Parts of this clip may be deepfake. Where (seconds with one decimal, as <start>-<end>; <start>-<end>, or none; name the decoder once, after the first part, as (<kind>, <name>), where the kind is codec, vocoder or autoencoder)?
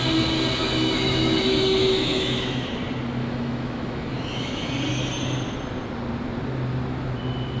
0.6-2.7 (autoencoder, DAC-VAE); 3.2-4.7